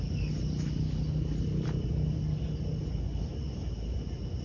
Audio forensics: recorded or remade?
recorded